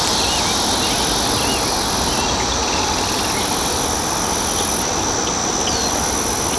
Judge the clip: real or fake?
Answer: real